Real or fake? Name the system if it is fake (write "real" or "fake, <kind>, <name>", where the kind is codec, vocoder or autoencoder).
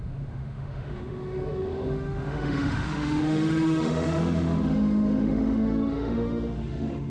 fake, autoencoder, DAC-VAE